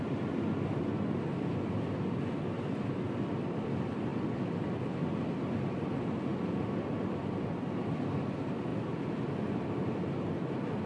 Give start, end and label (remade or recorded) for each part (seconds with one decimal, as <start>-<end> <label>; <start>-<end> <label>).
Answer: 0.0-10.9 recorded